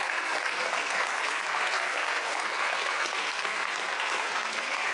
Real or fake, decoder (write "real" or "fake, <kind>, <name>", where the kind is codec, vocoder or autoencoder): fake, codec, SNAC